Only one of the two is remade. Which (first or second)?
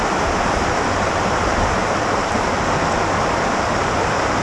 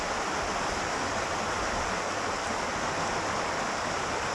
first